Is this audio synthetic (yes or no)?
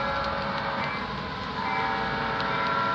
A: no